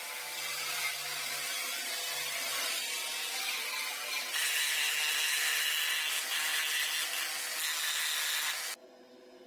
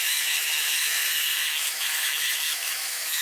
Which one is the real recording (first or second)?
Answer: first